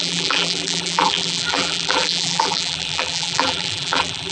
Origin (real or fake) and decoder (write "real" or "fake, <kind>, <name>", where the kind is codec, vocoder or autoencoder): fake, vocoder, BigVGAN v2